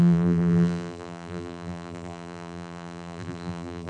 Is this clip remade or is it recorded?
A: remade